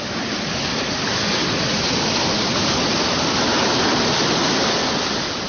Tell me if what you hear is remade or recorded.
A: recorded